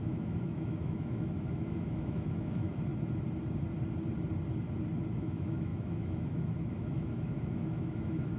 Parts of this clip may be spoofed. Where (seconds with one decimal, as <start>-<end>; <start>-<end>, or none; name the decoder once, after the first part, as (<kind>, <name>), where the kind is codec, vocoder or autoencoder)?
0.0-2.9 (autoencoder, DAC-VAE); 5.1-8.4